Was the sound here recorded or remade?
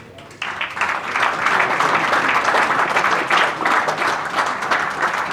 recorded